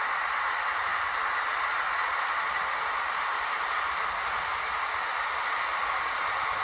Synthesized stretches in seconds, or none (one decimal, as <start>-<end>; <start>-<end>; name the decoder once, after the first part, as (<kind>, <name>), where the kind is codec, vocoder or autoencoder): none